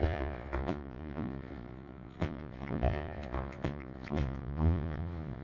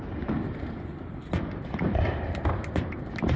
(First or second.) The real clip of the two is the second